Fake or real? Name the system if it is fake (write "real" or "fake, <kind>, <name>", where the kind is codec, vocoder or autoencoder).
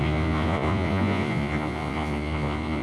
fake, vocoder, Vocos